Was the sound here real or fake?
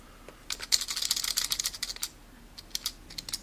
real